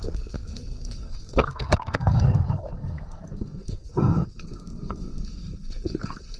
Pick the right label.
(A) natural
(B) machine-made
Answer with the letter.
B